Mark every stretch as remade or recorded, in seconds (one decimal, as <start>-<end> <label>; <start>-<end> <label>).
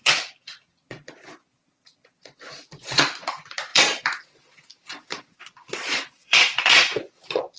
0.0-7.6 remade